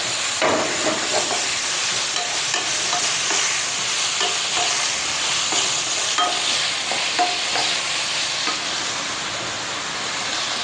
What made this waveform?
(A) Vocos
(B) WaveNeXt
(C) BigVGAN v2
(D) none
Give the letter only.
D